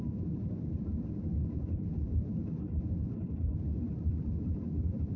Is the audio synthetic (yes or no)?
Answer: no